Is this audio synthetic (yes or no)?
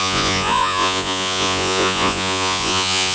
yes